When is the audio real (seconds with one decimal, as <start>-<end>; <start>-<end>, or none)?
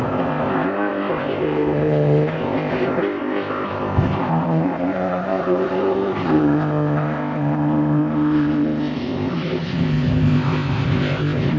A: none